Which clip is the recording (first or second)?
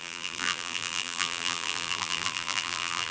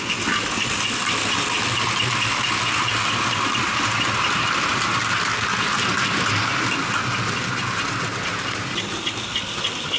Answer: second